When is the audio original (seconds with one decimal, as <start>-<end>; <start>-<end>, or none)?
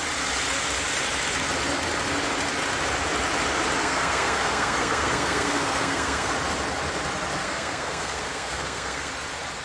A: 0.0-3.8; 6.3-7.4; 9.1-9.6